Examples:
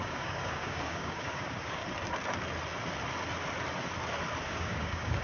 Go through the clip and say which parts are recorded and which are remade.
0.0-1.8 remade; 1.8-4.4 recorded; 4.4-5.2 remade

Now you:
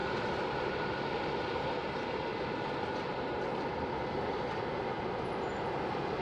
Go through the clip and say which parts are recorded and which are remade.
0.0-6.2 recorded

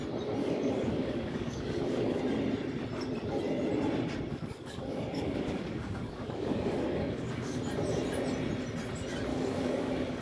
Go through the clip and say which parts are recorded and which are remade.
0.0-0.4 recorded; 0.4-2.2 remade; 2.2-4.3 recorded; 4.3-7.6 remade; 7.6-9.3 recorded; 9.3-10.2 remade